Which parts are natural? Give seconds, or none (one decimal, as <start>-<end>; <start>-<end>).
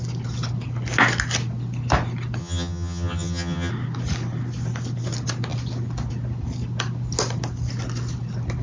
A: 0.0-2.4; 3.7-8.6